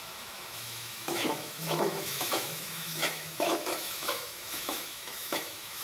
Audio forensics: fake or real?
fake